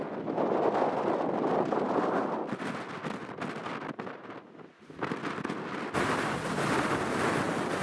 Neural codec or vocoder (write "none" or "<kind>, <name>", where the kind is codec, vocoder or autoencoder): none